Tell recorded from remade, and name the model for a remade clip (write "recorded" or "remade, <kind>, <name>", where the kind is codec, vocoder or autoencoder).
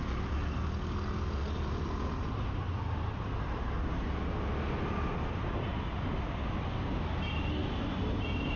recorded